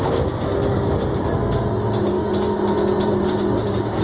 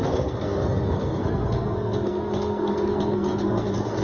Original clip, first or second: first